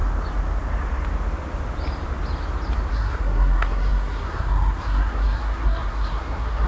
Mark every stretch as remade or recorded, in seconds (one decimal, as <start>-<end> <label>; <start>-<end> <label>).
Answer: 0.0-2.9 recorded; 2.9-6.7 remade